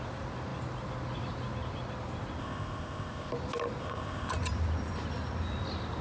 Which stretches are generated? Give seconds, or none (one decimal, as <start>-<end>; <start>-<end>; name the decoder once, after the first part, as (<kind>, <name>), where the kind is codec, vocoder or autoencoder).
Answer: 2.4-3.3 (codec, ZipCodec); 3.8-4.3